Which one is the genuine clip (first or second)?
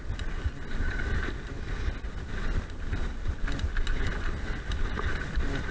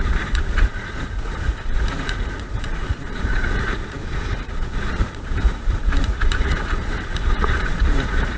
first